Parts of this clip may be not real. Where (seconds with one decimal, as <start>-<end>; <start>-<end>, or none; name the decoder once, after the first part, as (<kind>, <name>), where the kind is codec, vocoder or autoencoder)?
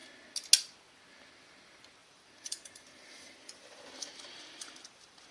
2.0-5.3 (vocoder, BigVGAN v2)